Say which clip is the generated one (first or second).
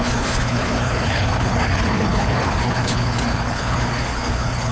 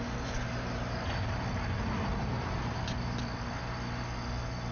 first